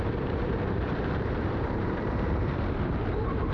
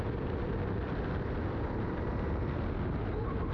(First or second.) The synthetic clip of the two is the first